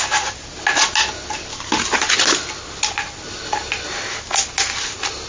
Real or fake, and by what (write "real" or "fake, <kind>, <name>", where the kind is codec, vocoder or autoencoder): real